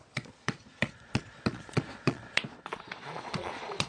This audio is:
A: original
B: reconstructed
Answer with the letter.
B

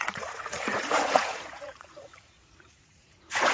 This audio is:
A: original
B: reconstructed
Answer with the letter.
B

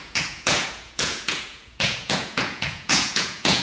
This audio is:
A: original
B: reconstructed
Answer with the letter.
B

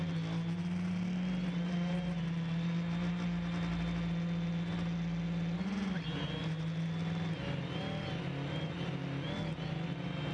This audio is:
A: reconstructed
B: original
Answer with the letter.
B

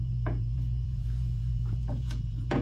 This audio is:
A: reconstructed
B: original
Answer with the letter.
A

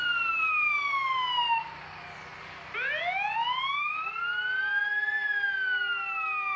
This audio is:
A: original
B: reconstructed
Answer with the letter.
A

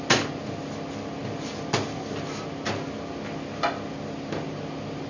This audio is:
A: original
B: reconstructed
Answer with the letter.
A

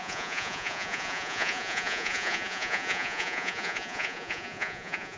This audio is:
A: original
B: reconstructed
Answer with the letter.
B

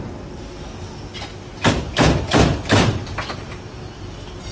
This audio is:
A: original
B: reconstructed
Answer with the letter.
A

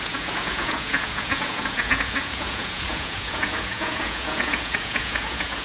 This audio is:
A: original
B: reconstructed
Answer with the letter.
B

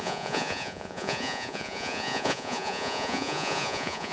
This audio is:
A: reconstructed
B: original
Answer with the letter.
A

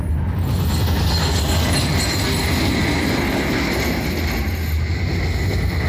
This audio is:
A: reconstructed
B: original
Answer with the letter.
B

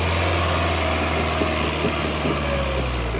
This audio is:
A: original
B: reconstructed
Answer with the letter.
A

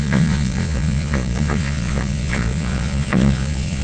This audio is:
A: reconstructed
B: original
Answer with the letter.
A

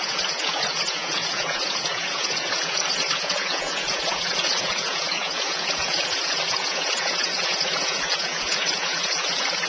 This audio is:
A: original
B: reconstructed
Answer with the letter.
B